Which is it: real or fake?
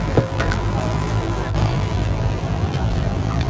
fake